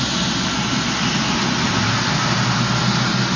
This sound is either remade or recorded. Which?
recorded